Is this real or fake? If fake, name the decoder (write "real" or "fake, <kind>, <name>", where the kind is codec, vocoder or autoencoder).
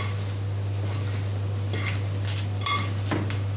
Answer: real